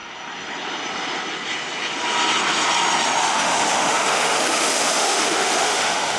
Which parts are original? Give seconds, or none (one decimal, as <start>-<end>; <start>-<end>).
0.0-3.2